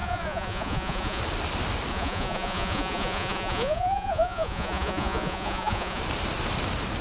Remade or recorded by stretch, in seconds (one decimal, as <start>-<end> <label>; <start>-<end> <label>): 0.0-1.2 remade; 1.2-1.9 recorded; 1.9-6.0 remade; 6.0-7.0 recorded